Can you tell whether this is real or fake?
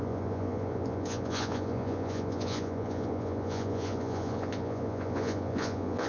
fake